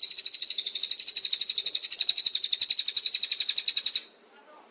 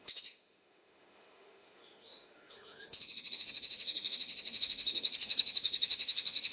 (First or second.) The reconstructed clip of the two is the second